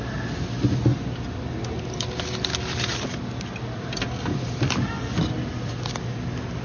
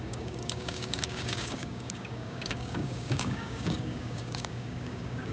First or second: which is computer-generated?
second